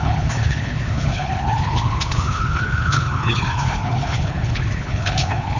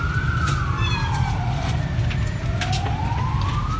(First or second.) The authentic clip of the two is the second